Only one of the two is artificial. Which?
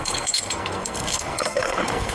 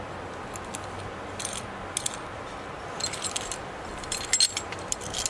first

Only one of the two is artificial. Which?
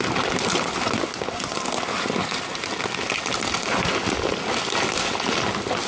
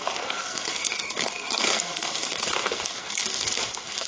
second